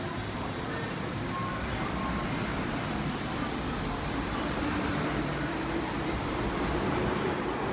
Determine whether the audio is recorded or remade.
remade